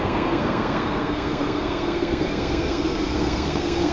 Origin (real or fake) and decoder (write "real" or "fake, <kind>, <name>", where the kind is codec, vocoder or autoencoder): fake, codec, SNAC